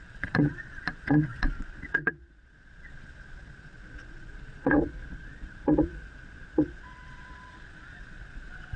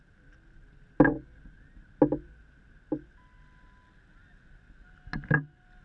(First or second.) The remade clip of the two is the first